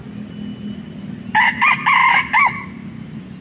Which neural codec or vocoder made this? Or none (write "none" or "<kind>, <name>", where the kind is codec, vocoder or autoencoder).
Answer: none